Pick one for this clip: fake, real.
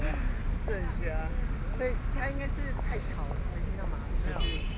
real